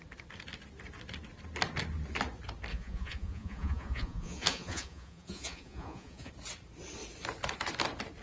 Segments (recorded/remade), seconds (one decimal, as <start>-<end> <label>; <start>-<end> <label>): 0.0-2.7 recorded; 2.7-6.3 remade; 6.3-8.2 recorded